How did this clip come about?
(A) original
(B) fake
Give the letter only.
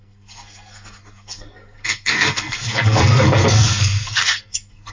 B